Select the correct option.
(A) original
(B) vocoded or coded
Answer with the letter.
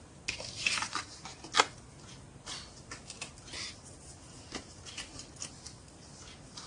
A